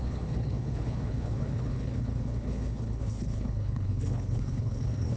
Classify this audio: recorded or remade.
remade